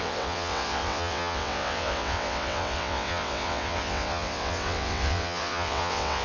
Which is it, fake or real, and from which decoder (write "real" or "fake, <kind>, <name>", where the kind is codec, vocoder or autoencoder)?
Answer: fake, vocoder, WaveNeXt